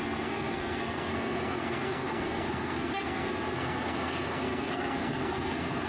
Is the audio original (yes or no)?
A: no